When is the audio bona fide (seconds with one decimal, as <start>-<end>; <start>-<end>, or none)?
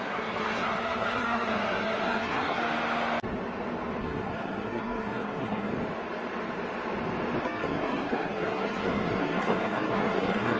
2.6-4.0; 5.7-7.4